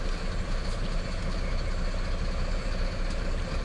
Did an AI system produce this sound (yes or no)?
no